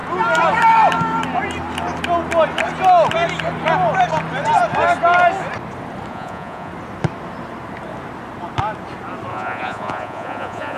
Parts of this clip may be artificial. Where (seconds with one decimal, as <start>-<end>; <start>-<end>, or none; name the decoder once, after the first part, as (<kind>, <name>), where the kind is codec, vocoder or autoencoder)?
6.1-6.7 (vocoder, Vocos); 9.3-10.8